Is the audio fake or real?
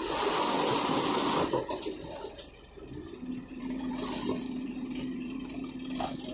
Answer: fake